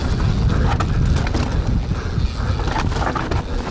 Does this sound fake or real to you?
real